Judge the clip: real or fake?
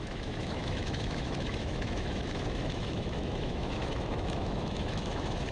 fake